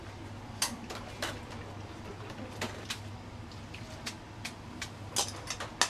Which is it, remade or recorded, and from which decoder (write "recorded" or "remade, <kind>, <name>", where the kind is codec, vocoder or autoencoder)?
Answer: recorded